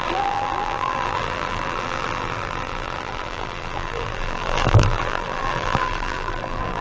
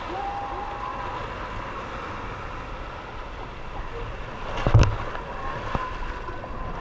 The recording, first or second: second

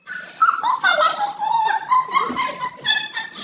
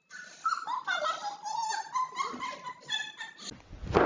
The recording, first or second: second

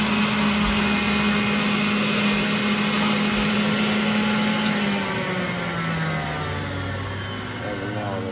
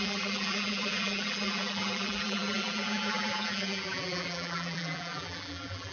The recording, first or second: first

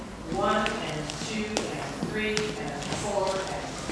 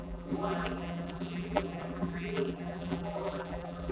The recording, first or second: first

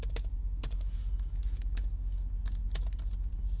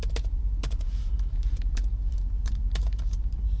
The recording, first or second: first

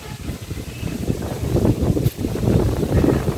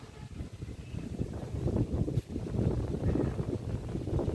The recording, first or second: first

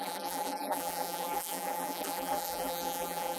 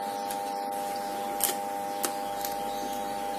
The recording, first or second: second